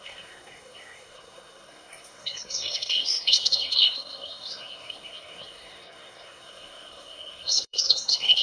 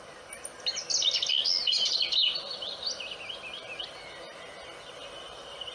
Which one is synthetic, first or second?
first